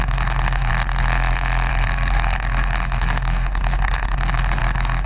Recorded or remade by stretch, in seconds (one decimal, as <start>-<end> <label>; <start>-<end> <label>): 0.0-0.7 remade; 0.7-1.7 recorded; 1.7-5.1 remade